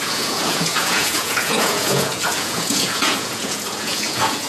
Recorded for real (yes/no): no